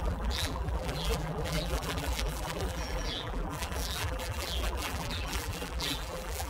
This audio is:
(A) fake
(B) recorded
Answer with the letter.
A